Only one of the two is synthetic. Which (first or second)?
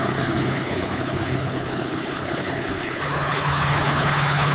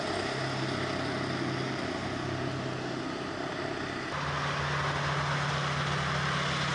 first